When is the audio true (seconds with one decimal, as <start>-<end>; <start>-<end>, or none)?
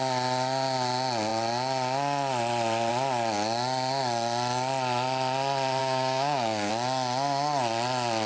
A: 0.0-5.8; 6.7-8.3